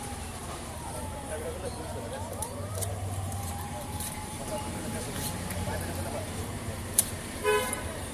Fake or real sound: fake